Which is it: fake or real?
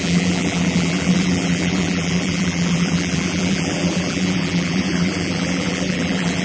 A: fake